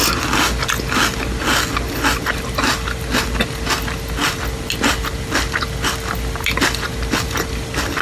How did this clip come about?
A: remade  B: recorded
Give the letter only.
B